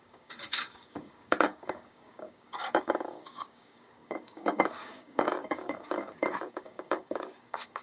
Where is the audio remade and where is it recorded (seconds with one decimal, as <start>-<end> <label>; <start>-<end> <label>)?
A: 0.0-7.8 remade